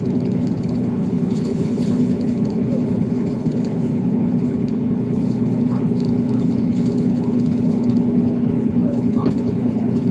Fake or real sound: fake